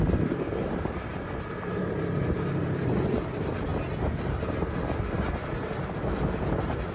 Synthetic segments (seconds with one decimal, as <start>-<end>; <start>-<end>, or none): 0.0-3.7; 5.8-6.9